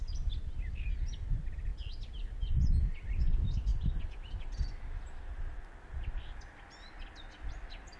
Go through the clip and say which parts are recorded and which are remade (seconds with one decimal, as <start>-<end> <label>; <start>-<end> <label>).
0.0-8.0 recorded